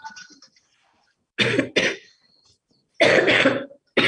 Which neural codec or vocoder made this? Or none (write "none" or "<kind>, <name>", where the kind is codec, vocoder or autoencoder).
none